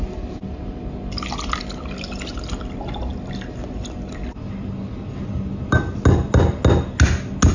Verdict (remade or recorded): recorded